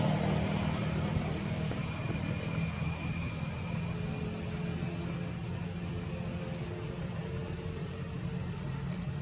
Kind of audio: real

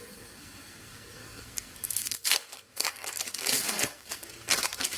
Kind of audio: fake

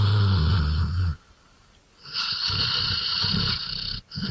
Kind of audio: real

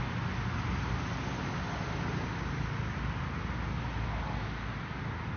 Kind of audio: real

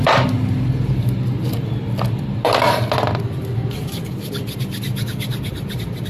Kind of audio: real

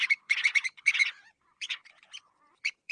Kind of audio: fake